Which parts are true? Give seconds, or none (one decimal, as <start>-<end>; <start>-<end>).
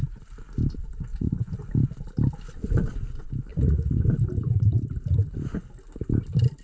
0.0-1.1; 1.6-3.5; 4.0-6.6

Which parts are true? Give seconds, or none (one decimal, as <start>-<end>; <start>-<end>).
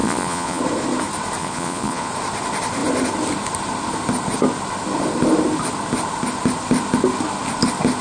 0.6-1.4; 2.1-8.0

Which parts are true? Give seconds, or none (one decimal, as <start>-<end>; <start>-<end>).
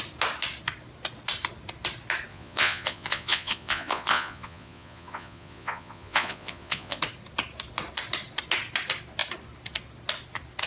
0.0-2.3; 7.0-10.7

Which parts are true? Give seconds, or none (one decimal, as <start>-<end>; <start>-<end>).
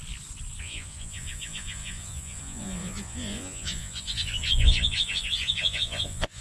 0.0-0.6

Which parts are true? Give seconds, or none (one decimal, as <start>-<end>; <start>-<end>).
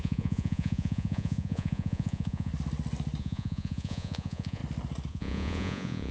2.5-3.2; 4.6-5.1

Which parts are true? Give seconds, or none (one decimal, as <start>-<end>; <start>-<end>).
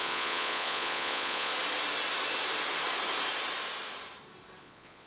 1.5-4.6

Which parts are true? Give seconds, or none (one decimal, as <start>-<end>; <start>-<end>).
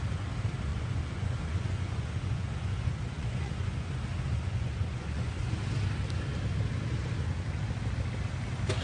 0.0-0.7; 5.5-8.8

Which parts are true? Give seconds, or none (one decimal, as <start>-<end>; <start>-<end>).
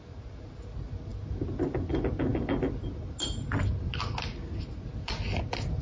0.0-5.8